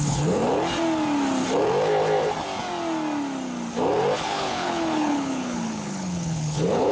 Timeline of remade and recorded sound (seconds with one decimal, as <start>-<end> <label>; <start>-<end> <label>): 0.0-0.4 remade; 0.4-4.2 recorded; 4.2-6.9 remade